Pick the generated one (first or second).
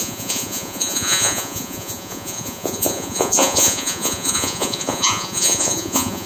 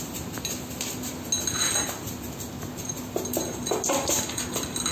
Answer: first